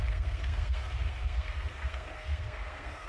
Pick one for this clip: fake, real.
fake